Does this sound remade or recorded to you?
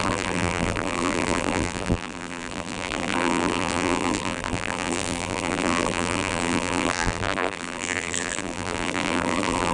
remade